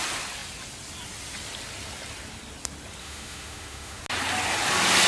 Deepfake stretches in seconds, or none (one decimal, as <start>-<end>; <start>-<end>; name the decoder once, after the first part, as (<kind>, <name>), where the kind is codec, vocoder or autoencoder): 3.0-4.0 (autoencoder, DAC-VAE)